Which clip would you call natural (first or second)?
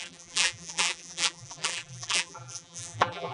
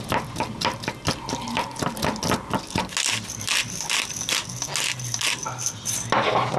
second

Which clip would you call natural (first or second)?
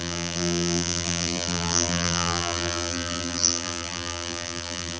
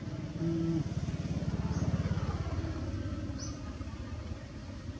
second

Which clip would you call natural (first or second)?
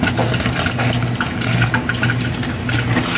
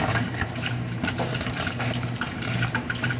first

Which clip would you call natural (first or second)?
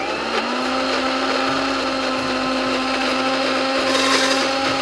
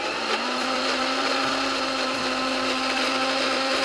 first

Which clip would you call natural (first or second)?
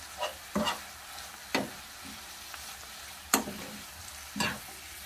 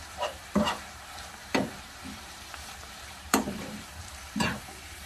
first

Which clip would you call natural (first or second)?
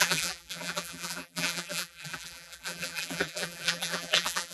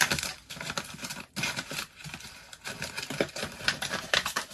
second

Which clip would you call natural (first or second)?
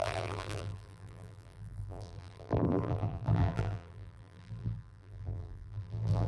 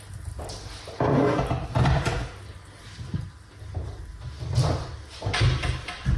second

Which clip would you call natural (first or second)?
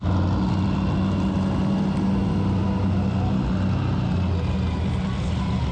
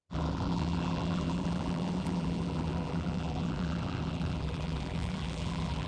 first